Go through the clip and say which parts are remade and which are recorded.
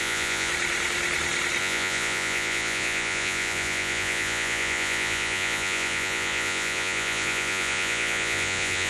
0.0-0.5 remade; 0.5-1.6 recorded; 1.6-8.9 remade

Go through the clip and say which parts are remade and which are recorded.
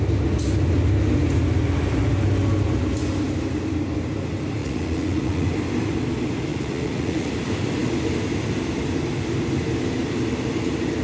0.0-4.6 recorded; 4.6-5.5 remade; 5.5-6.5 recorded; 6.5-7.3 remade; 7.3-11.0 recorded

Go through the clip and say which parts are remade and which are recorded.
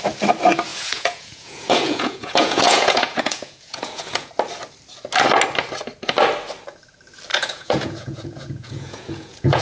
0.0-0.7 recorded; 0.7-4.3 remade; 4.3-7.3 recorded; 7.3-9.6 remade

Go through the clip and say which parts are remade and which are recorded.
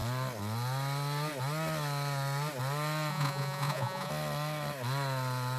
0.0-3.1 recorded; 3.1-4.1 remade; 4.1-5.6 recorded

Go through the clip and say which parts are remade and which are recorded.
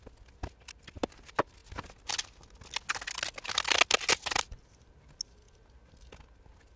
0.0-6.8 recorded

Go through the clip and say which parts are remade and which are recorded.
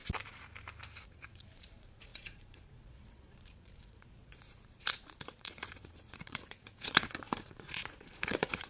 0.0-1.0 recorded; 1.0-8.7 remade